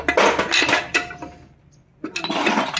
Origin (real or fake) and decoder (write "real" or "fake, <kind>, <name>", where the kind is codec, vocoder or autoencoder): real